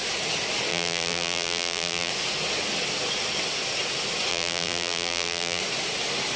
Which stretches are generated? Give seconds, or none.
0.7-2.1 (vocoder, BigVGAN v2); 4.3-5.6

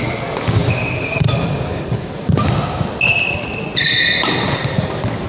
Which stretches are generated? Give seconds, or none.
0.6-3.6 (vocoder, BigVGAN v2)

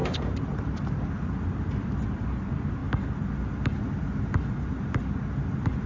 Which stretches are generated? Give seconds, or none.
0.0-1.3 (vocoder, BigVGAN v2)

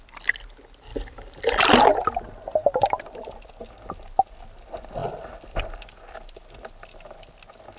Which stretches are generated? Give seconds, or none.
0.9-1.6 (vocoder, BigVGAN v2); 2.6-3.5; 5.0-6.7